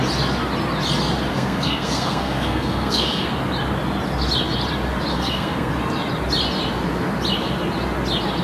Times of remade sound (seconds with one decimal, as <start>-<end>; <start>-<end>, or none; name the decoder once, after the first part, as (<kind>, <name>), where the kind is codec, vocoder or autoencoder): 1.3-3.3 (codec, SNAC); 5.1-5.7

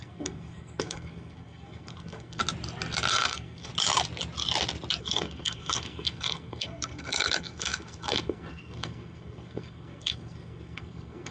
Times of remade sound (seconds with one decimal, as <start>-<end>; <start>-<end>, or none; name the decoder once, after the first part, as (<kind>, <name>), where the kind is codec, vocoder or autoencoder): 0.0-2.4 (codec, SNAC); 3.1-3.7; 5.0-11.3

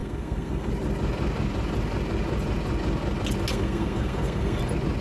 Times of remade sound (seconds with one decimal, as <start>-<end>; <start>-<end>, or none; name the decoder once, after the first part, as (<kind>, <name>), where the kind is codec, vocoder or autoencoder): 0.0-0.7 (codec, SNAC); 3.5-4.6

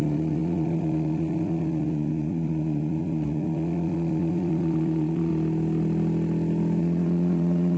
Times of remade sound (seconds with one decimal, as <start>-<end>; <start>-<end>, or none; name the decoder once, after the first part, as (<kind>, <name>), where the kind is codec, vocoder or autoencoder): 0.0-5.3 (vocoder, Vocos); 6.8-7.8

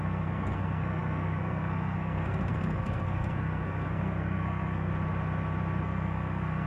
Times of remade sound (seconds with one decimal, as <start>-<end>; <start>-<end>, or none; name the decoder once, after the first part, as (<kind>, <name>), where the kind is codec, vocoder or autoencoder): 0.0-4.9 (codec, SNAC); 5.8-6.7

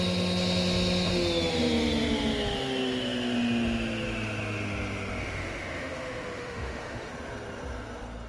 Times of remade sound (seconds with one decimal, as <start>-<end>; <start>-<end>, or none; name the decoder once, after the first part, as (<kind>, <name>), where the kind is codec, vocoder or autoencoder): 5.2-7.1 (autoencoder, DAC-VAE)

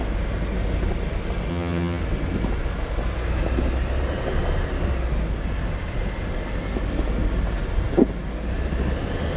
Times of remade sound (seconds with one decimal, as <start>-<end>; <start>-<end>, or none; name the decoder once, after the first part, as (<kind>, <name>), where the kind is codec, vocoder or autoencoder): 1.5-2.0 (vocoder, HiFi-GAN)